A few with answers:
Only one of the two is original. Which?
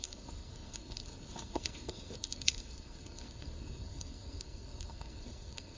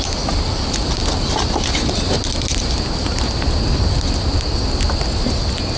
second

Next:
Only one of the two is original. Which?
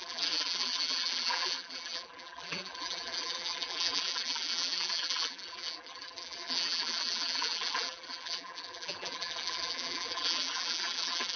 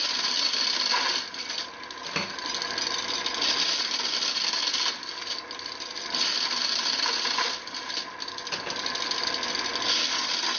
second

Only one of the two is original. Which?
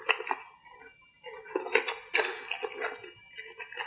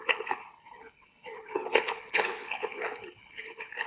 first